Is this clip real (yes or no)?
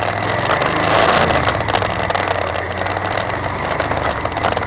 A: yes